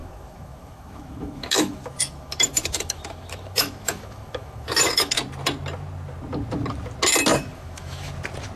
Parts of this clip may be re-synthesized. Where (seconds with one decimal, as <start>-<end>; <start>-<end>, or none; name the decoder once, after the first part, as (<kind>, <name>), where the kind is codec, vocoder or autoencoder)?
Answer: 0.0-5.2 (autoencoder, DAC-VAE); 7.3-8.1